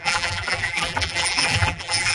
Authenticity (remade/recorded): remade